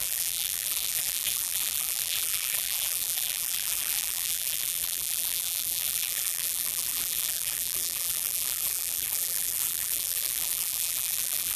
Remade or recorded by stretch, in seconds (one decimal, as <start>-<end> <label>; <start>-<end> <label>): 0.0-11.6 remade